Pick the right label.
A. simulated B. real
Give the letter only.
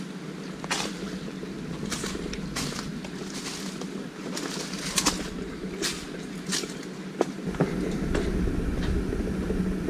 B